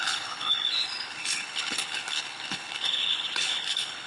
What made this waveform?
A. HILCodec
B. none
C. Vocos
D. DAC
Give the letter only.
A